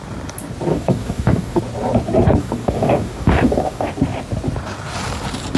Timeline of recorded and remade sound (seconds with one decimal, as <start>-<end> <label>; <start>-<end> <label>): 0.0-0.7 recorded; 0.7-1.6 remade; 1.6-2.4 recorded; 2.4-3.9 remade; 3.9-5.6 recorded